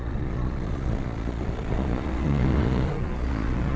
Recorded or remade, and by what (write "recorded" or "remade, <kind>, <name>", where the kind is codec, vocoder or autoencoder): remade, vocoder, Vocos